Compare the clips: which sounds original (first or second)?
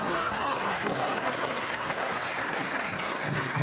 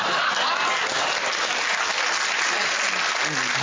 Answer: second